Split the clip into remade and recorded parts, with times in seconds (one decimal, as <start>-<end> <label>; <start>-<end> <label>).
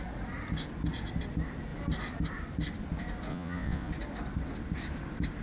0.0-3.3 recorded; 3.3-3.9 remade; 3.9-5.4 recorded